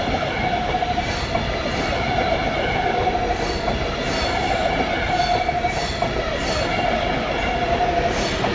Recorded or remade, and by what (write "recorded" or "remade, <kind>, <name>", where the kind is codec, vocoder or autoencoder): recorded